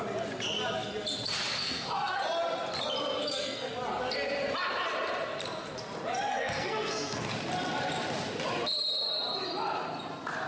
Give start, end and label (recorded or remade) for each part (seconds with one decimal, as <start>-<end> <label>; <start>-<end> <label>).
0.0-1.6 recorded; 1.6-2.2 remade; 2.2-3.2 recorded; 3.2-3.7 remade; 3.7-6.3 recorded; 6.3-7.2 remade; 7.2-10.5 recorded